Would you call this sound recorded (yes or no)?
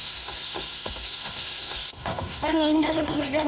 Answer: no